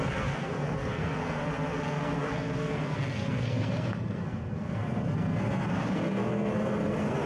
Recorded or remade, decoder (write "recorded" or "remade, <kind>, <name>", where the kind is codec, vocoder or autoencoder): remade, codec, SNAC